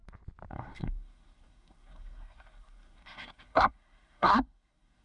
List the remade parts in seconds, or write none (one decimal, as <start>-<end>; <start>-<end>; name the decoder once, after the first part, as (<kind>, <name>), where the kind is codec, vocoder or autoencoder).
0.5-5.0 (codec, SNAC)